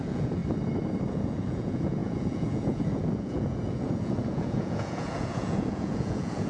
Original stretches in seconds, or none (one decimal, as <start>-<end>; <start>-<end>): 0.4-1.1